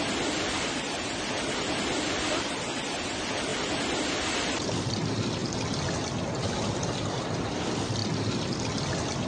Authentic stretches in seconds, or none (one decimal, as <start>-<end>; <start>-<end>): 5.4-6.4; 8.0-8.6

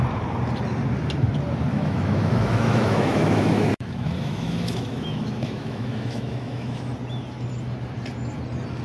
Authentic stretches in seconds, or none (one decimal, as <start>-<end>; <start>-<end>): 0.0-1.7; 6.9-8.8

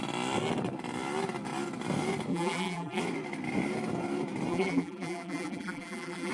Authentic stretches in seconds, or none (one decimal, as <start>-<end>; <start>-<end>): 0.0-2.3; 3.0-4.5

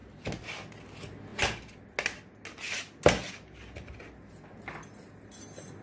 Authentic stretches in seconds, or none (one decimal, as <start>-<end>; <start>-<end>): 0.0-5.8

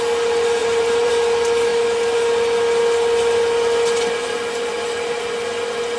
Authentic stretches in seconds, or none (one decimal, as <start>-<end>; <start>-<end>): 0.0-0.6; 1.1-6.0

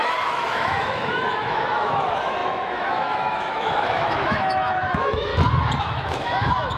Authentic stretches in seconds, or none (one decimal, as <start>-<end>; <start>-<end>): 5.3-5.8